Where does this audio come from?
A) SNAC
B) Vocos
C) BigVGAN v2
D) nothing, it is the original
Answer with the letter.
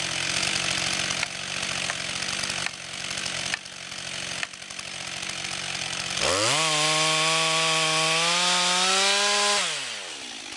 D